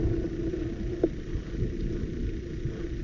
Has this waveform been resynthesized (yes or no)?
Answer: yes